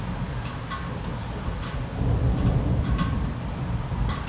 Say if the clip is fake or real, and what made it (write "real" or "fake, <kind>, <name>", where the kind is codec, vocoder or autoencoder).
real